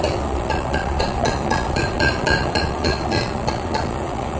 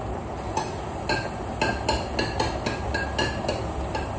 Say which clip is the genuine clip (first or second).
second